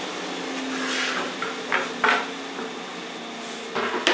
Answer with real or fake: real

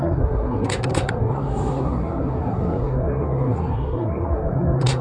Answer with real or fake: fake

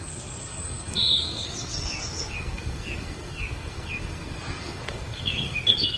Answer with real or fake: fake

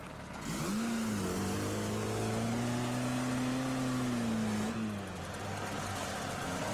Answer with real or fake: real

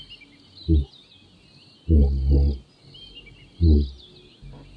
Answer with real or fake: real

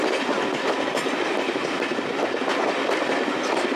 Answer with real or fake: real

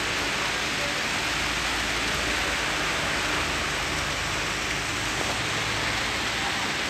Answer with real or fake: real